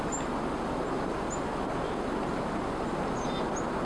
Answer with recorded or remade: recorded